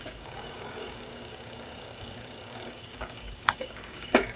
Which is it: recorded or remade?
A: remade